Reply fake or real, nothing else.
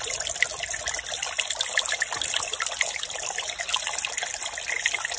real